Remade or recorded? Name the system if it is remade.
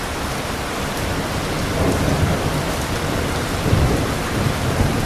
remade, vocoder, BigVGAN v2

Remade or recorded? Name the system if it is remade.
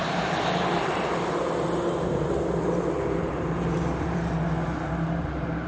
remade, vocoder, BigVGAN v2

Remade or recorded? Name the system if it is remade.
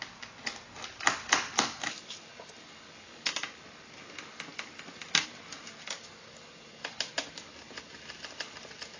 recorded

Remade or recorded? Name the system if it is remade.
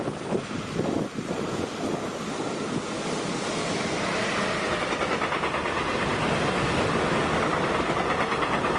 recorded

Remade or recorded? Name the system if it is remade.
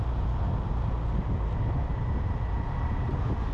recorded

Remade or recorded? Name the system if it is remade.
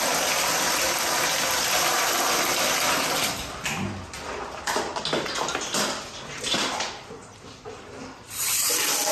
recorded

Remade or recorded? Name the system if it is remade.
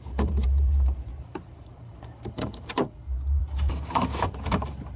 remade, vocoder, BigVGAN v2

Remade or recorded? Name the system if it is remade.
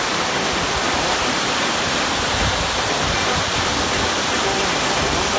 remade, vocoder, BigVGAN v2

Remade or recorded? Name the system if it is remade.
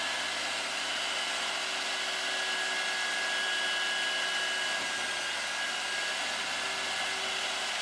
recorded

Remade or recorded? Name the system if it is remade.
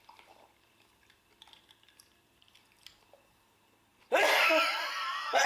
remade, vocoder, BigVGAN v2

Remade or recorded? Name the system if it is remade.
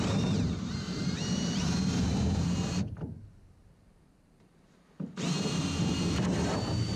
remade, vocoder, BigVGAN v2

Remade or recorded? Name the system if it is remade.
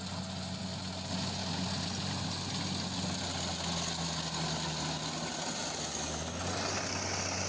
recorded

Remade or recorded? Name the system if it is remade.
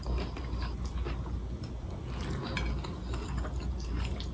recorded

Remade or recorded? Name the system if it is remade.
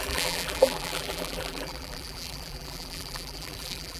remade, vocoder, BigVGAN v2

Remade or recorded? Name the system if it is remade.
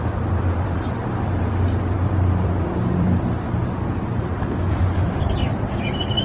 remade, vocoder, BigVGAN v2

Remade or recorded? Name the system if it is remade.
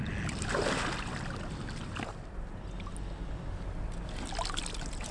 recorded